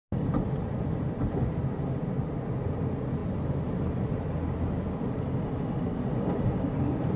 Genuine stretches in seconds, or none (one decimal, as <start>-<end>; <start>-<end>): 0.0-7.2